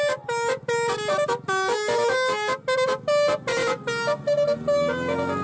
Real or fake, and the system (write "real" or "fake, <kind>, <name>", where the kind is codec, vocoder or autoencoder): real